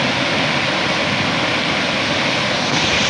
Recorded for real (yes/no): yes